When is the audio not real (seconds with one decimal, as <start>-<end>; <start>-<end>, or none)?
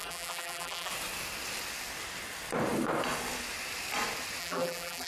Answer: 0.0-0.9; 4.4-5.1